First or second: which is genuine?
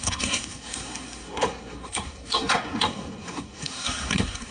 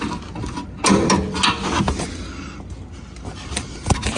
second